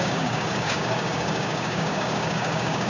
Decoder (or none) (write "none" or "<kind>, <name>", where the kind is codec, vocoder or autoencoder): codec, DAC